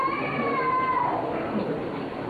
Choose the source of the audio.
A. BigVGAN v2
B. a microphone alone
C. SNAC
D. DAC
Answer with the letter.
A